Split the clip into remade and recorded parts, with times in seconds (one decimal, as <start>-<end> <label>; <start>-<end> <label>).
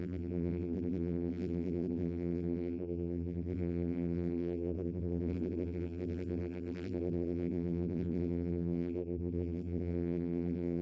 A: 0.0-10.8 remade